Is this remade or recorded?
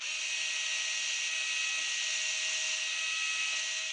recorded